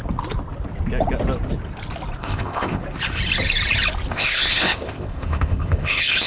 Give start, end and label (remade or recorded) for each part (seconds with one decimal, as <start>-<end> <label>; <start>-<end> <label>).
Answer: 0.0-2.2 recorded; 2.2-2.8 remade; 2.8-4.1 recorded; 4.1-6.3 remade